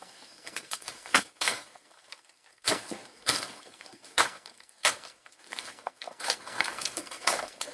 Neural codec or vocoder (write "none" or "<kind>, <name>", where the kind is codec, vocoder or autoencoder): codec, SNAC